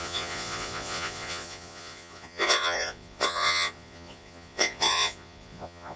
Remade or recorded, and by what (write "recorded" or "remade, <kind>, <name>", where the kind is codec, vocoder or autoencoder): remade, vocoder, Vocos